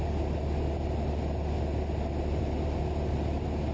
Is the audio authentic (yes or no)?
yes